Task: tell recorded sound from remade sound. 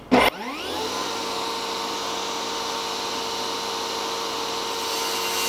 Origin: recorded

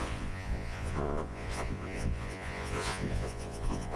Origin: remade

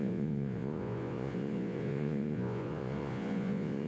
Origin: remade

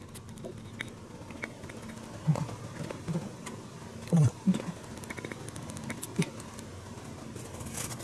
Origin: recorded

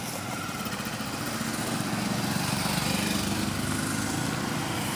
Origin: recorded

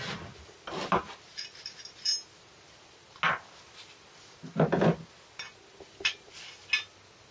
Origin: recorded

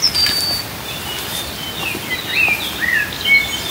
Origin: recorded